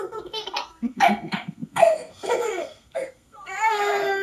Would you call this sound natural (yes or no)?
no